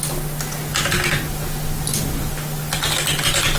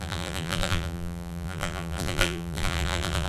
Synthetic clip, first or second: second